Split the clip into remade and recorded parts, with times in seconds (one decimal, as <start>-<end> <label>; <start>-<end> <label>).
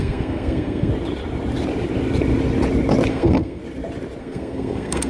0.0-0.9 remade; 0.9-3.1 recorded; 3.1-3.6 remade; 3.6-4.2 recorded; 4.2-5.1 remade